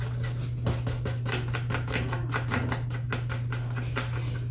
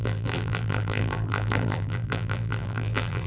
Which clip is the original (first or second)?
first